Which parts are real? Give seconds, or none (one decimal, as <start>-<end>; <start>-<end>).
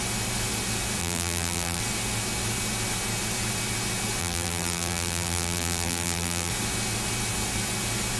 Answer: 0.0-1.0; 1.8-4.2; 6.5-8.2